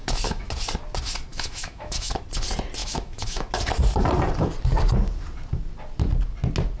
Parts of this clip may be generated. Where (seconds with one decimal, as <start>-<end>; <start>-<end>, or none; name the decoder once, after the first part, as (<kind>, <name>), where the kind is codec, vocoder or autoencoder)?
0.0-0.5 (autoencoder, DAC-VAE); 1.3-2.2; 2.8-3.5